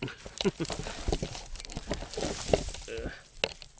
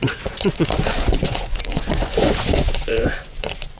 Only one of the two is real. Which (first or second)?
first